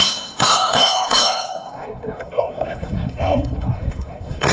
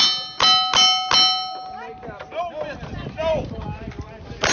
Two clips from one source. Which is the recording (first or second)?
second